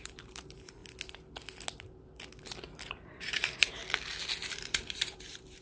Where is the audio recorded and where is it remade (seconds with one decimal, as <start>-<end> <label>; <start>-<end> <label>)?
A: 0.0-0.8 remade; 0.8-2.9 recorded; 2.9-3.8 remade; 3.8-4.4 recorded; 4.4-5.6 remade